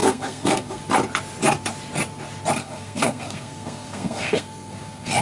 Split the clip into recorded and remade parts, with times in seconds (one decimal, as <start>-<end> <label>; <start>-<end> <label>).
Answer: 0.0-0.8 remade; 0.8-2.6 recorded; 2.6-5.2 remade